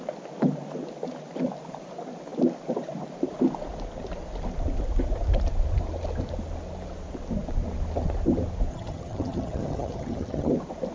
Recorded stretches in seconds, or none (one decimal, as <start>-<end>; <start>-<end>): 0.0-8.7; 10.5-10.9